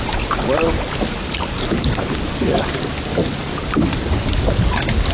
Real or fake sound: real